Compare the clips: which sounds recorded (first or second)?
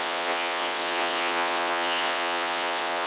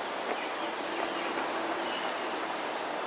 second